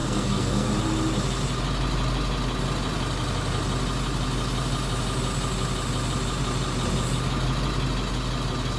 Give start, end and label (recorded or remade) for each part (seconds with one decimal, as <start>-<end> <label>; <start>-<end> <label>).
0.0-0.7 remade; 0.7-8.8 recorded

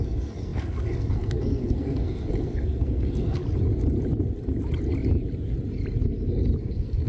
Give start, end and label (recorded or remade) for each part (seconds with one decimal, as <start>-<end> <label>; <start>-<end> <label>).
0.0-3.4 remade; 3.4-6.6 recorded; 6.6-7.1 remade